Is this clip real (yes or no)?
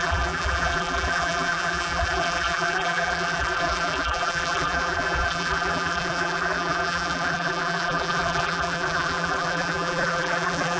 no